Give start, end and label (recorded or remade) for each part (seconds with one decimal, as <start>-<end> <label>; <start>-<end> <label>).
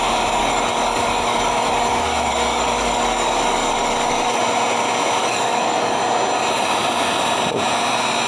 0.0-0.4 recorded; 0.4-4.4 remade; 4.4-5.2 recorded; 5.2-6.0 remade; 6.0-8.3 recorded